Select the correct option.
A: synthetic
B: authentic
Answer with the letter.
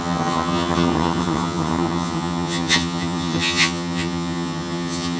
A